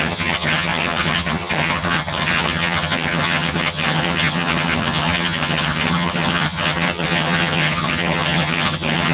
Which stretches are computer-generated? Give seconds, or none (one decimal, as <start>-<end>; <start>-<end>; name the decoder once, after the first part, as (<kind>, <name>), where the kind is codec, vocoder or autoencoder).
0.0-9.1 (vocoder, HiFi-GAN)